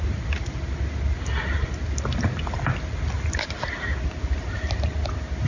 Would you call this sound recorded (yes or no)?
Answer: yes